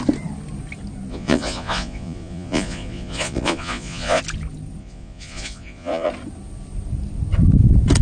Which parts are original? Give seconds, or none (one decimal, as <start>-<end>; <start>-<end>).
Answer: 0.0-1.1; 4.2-4.8; 6.1-8.0